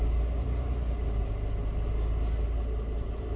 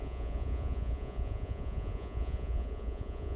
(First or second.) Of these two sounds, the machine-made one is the second